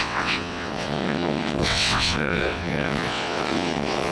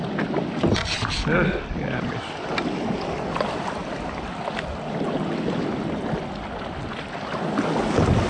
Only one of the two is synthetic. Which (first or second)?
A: first